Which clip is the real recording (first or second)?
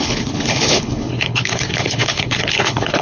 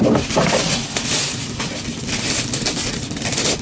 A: second